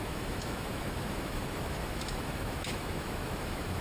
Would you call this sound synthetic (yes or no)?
yes